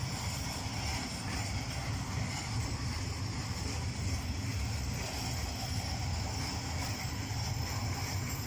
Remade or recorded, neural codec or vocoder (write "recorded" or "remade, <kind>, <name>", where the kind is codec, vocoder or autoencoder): recorded